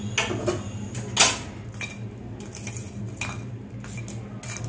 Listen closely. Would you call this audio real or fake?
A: real